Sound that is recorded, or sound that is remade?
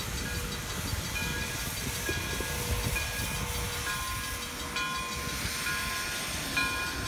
recorded